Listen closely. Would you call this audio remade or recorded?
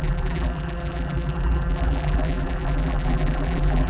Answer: remade